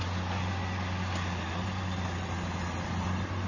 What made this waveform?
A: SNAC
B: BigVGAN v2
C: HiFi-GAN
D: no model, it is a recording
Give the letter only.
D